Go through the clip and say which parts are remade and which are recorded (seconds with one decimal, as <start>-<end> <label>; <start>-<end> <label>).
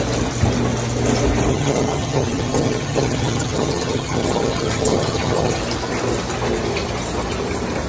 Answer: 0.0-1.5 recorded; 1.5-5.6 remade; 5.6-7.9 recorded